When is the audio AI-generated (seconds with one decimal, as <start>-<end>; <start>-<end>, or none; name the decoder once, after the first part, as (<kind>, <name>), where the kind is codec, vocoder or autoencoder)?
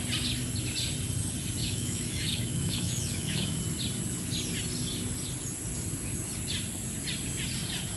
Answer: 1.6-3.6 (autoencoder, DAC-VAE)